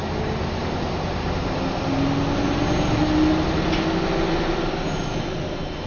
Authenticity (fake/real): real